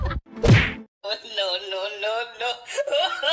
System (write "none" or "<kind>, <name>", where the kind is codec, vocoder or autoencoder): none